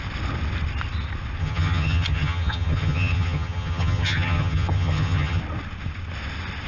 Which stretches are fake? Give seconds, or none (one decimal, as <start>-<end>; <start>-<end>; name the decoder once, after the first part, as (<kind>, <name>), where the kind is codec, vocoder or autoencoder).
1.4-5.4 (vocoder, HiFi-GAN)